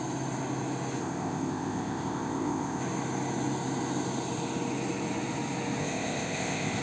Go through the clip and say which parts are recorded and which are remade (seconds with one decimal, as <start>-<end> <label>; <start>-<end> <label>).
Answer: 0.0-1.0 recorded; 1.0-2.8 remade; 2.8-5.8 recorded; 5.8-6.8 remade

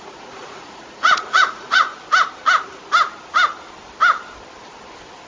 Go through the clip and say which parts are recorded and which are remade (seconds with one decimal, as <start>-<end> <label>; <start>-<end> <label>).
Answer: 0.0-1.9 remade; 1.9-5.3 recorded

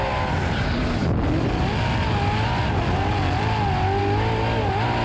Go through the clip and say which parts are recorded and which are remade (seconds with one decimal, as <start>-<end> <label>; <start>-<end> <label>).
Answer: 0.0-5.0 recorded

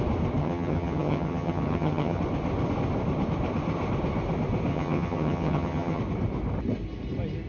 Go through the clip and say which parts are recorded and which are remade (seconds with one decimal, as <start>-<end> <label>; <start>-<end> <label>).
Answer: 0.0-0.4 recorded; 0.4-2.2 remade; 2.2-4.7 recorded; 4.7-6.0 remade; 6.0-7.5 recorded

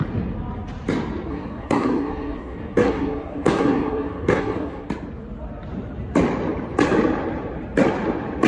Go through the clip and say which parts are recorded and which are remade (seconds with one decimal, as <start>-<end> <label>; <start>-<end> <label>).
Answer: 0.0-1.3 recorded; 1.3-4.9 remade; 4.9-8.5 recorded

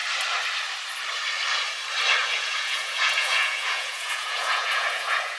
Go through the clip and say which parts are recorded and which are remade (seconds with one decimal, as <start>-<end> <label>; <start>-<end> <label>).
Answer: 0.0-2.2 recorded; 2.2-5.4 remade

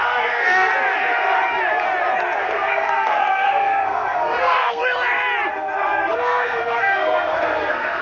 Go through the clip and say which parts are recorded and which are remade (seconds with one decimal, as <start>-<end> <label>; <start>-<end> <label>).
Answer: 0.0-0.7 remade; 0.7-2.4 recorded; 2.4-4.8 remade; 4.8-5.5 recorded; 5.5-8.0 remade

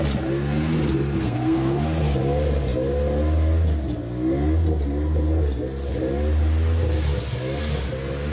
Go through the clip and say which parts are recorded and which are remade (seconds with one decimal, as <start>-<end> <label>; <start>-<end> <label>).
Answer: 0.0-1.2 recorded; 1.2-1.8 remade; 1.8-8.3 recorded